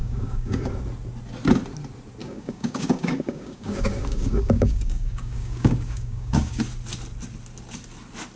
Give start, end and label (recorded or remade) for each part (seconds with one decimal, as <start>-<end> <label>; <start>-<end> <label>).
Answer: 0.0-0.7 remade; 0.7-2.2 recorded; 2.2-6.6 remade; 6.6-8.4 recorded